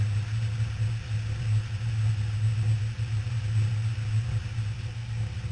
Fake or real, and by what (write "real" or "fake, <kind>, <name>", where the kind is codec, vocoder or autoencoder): real